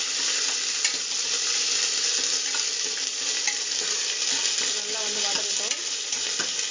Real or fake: real